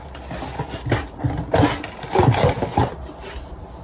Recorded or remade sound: recorded